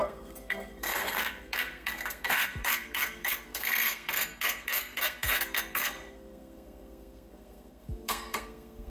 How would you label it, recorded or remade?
remade